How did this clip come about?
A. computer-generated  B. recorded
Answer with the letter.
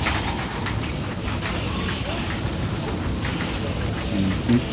B